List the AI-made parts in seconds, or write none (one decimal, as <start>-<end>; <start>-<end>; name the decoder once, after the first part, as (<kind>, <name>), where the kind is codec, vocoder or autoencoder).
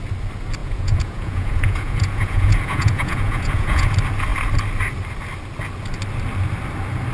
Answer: 0.6-3.9 (vocoder, Vocos)